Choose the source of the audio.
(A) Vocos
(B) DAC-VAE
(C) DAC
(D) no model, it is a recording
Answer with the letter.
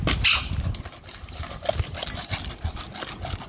D